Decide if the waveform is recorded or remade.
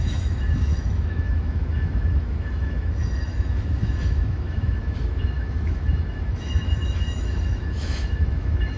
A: remade